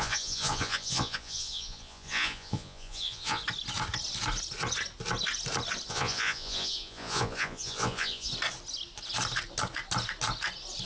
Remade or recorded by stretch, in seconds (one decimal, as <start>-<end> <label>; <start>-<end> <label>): 0.0-3.4 remade; 3.4-5.9 recorded; 5.9-8.3 remade; 8.3-10.9 recorded